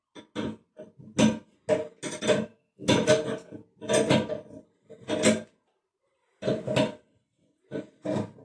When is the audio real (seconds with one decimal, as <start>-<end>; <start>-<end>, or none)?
0.0-2.5; 3.1-8.4